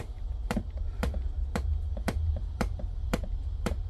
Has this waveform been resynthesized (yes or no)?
yes